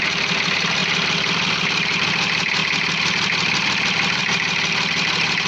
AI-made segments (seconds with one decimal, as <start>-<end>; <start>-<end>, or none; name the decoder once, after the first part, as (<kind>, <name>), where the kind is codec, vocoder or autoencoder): none